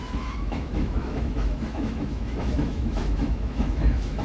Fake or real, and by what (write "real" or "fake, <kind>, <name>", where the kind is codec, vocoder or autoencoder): fake, autoencoder, DAC-VAE